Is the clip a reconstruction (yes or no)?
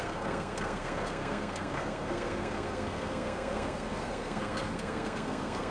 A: yes